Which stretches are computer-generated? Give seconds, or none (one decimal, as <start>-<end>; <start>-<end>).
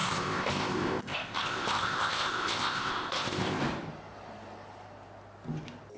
0.0-3.6